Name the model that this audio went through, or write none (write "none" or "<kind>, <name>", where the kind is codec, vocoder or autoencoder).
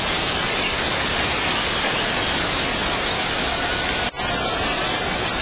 none